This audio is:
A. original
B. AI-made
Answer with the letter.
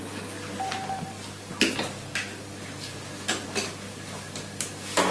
A